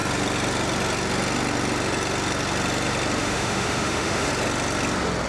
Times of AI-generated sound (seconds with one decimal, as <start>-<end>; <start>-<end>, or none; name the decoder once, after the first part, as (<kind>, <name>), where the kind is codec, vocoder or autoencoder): 3.2-4.3 (autoencoder, DAC-VAE)